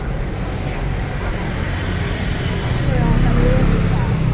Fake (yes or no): no